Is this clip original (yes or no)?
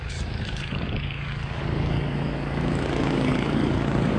no